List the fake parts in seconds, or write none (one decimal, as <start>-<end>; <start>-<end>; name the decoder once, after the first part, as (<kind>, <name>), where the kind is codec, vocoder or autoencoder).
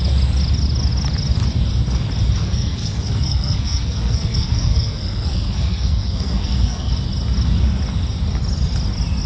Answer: 2.4-6.9 (codec, SNAC)